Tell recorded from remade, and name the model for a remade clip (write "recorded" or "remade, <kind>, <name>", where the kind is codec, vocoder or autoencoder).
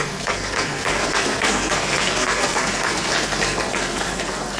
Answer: remade, codec, SNAC